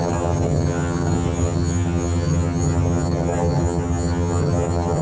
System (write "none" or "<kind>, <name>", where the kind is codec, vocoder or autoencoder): vocoder, HiFi-GAN